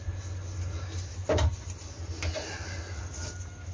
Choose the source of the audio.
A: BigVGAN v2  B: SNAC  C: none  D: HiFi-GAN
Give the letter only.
C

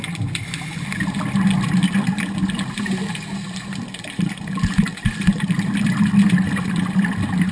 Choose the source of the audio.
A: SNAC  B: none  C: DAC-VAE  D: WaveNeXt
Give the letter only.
B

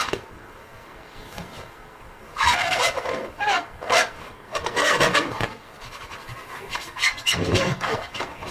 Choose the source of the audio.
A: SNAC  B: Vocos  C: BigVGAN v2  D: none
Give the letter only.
A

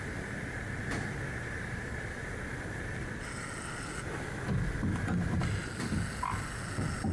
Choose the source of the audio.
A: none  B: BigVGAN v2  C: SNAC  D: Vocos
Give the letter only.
A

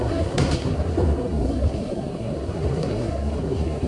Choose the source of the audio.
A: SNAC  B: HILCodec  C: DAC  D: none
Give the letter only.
A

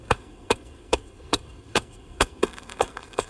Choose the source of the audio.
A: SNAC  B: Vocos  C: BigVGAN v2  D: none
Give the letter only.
A